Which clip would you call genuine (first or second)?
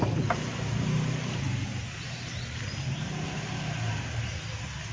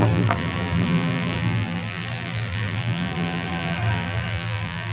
first